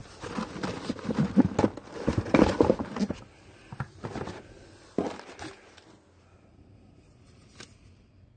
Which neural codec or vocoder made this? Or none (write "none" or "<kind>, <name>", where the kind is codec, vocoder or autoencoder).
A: none